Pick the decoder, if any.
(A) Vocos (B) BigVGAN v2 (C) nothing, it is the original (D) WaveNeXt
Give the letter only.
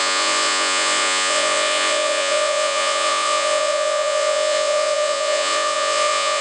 A